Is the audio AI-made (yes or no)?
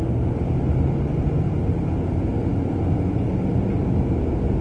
no